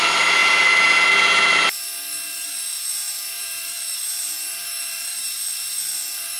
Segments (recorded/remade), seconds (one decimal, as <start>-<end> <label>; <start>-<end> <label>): 0.0-2.4 recorded; 2.4-6.4 remade